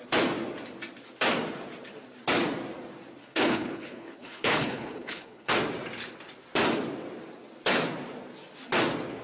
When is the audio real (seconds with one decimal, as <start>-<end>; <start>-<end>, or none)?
0.0-3.2; 5.5-9.2